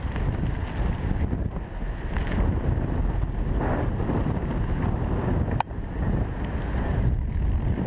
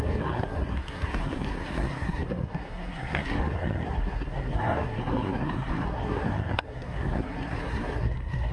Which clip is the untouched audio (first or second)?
first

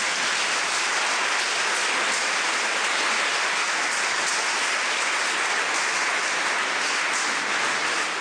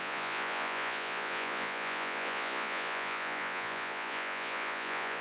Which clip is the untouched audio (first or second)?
first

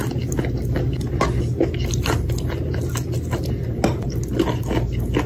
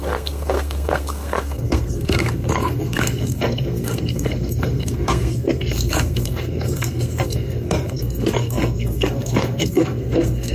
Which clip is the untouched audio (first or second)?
first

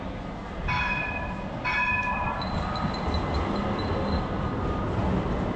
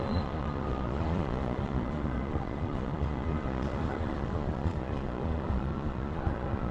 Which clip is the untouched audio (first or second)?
first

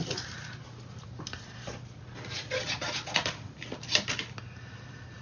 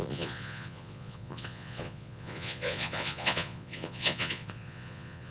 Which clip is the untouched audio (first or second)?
first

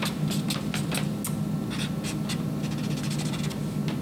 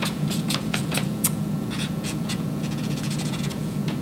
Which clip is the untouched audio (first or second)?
first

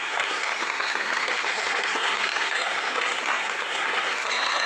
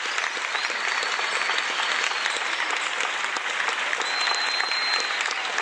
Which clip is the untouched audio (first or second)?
second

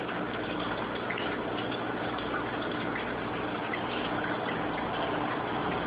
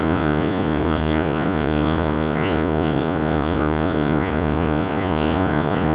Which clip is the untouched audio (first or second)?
first